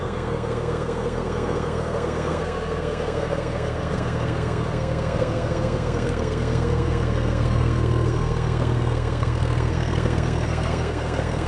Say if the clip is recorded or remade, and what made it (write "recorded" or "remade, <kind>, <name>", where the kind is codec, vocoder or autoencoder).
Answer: remade, codec, SNAC